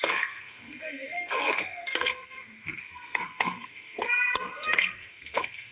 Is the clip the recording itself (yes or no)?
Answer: no